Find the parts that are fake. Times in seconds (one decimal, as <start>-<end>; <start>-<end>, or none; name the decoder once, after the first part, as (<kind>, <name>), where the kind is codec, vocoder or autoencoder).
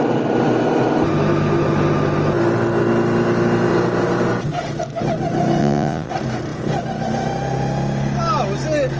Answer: 5.6-6.1 (vocoder, Vocos)